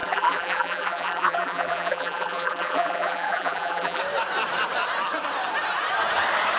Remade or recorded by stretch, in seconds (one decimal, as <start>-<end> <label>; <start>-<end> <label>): 0.0-4.0 remade; 4.0-6.6 recorded